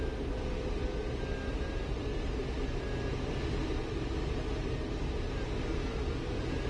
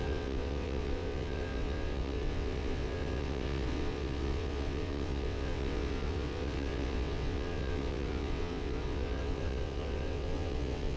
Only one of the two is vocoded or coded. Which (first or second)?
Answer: second